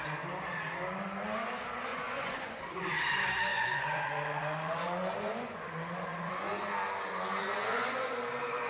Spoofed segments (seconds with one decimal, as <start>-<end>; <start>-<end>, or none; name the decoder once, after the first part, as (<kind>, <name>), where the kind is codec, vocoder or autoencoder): 1.9-2.6 (vocoder, Vocos); 3.5-6.3; 7.4-8.1